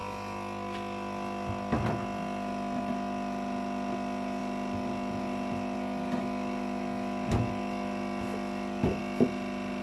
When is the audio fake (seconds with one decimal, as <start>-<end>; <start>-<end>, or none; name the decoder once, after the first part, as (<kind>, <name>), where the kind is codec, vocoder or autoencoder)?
none